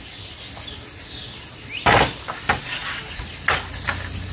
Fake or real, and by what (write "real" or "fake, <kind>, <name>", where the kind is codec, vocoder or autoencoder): real